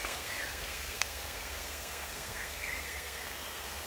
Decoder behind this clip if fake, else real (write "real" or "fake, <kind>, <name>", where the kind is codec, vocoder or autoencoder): fake, codec, SNAC